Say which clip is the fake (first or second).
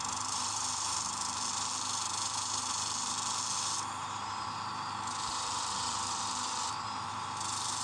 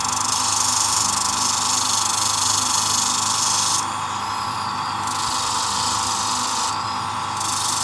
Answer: first